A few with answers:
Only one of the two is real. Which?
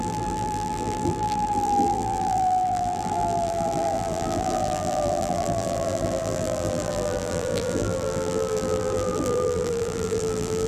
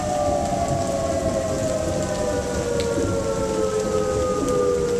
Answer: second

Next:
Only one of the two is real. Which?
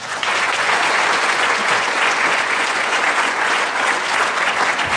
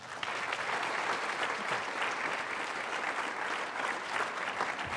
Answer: second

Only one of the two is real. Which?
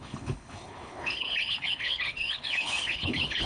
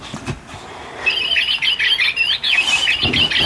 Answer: second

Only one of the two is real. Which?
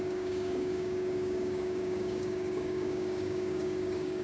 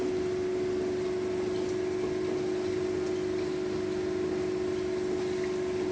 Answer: second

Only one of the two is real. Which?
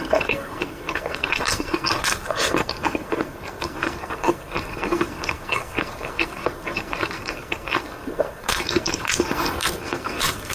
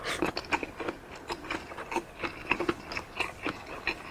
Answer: second